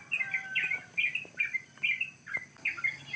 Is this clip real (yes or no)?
yes